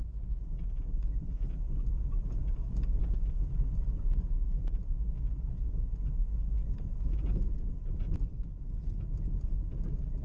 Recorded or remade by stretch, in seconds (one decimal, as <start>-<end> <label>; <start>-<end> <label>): 0.0-10.2 recorded